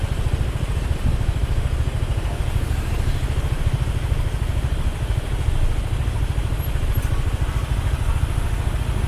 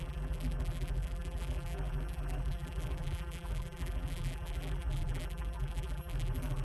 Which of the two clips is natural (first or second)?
first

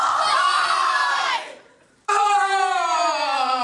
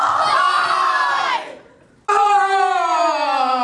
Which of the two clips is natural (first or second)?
second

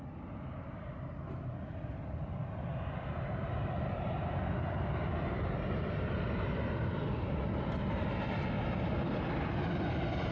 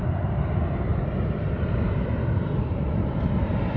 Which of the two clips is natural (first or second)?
first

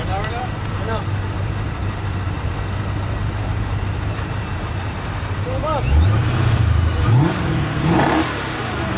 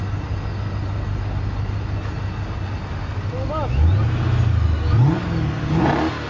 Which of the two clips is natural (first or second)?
second